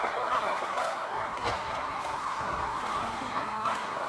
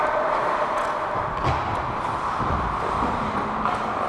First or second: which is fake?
first